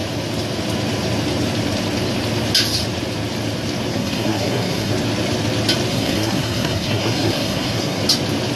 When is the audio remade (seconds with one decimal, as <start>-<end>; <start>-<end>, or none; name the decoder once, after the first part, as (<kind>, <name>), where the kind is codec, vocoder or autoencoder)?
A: 3.9-4.9 (codec, SNAC); 5.9-8.0